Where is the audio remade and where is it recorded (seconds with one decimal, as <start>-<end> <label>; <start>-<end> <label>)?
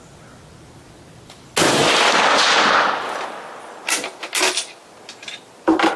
0.0-6.0 recorded